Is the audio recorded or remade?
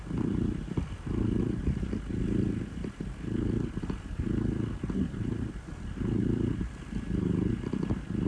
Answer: recorded